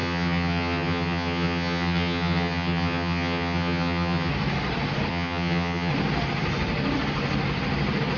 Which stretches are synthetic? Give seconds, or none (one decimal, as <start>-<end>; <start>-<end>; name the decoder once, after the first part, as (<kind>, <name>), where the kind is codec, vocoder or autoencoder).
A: 0.0-4.3 (vocoder, HiFi-GAN); 5.1-5.9